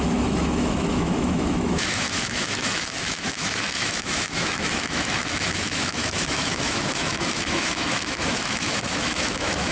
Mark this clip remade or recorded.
remade